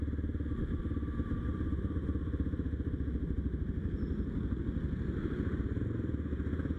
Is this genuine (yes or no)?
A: yes